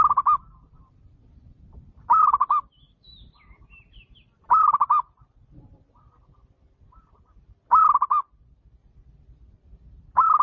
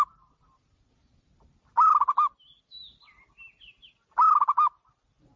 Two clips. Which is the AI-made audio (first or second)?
first